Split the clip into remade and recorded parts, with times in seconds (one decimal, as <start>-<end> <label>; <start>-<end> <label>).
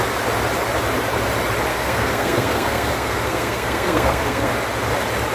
0.0-1.7 recorded; 1.7-4.5 remade; 4.5-5.3 recorded